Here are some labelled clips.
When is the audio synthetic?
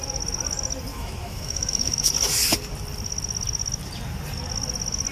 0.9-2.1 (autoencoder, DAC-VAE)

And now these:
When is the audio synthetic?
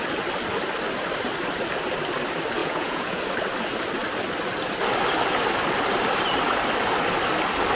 2.6-3.2 (vocoder, Vocos)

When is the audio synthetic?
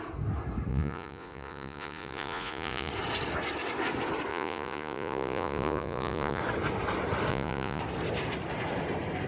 0.7-2.9 (vocoder, Vocos); 4.3-6.4; 7.3-7.8